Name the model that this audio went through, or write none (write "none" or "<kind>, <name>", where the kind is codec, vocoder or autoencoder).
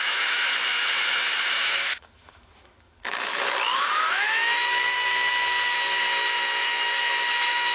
autoencoder, DAC-VAE